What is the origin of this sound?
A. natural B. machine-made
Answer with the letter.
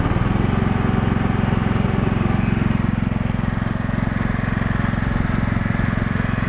A